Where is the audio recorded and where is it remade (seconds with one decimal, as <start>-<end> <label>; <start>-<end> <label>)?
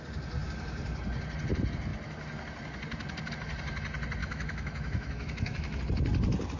0.0-4.2 recorded; 4.2-5.8 remade; 5.8-6.6 recorded